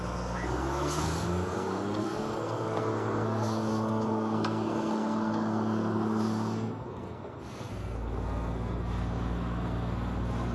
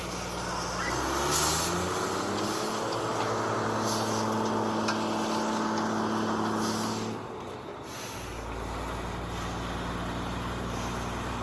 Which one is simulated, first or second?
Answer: first